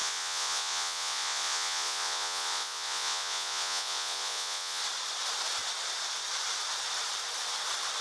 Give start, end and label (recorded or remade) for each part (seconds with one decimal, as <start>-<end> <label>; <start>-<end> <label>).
0.0-4.8 remade; 4.8-8.0 recorded

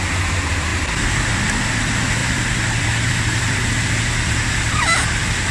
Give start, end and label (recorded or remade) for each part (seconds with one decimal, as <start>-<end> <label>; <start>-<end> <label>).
0.0-0.7 recorded; 0.7-1.3 remade; 1.3-2.2 recorded; 2.2-5.5 remade